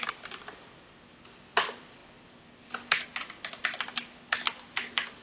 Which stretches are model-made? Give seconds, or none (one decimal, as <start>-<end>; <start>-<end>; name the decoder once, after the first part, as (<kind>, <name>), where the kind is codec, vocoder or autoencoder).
none